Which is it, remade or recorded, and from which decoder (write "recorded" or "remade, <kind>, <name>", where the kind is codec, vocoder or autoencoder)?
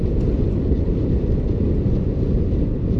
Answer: recorded